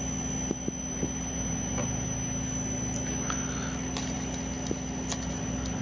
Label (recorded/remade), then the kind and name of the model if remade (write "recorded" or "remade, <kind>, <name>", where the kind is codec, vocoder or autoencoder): recorded